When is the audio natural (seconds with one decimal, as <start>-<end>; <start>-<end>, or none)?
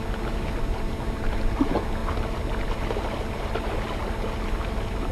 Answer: 0.0-5.1